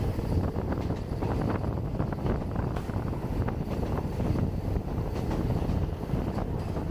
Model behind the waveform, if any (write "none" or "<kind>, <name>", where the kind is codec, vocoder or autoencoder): none